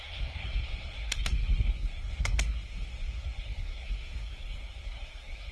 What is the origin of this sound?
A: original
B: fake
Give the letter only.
B